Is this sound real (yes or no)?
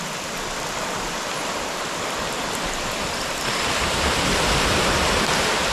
no